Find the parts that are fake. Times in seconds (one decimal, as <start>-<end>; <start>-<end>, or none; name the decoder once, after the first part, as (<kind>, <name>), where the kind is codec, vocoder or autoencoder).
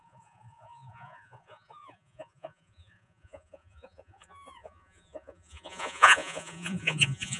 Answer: 0.0-7.4 (vocoder, Vocos)